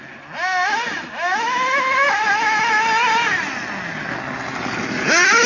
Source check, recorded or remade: recorded